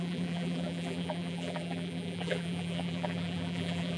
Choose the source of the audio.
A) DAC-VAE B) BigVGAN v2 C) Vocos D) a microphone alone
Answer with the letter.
B